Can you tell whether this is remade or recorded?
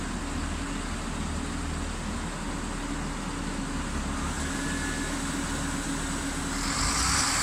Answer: recorded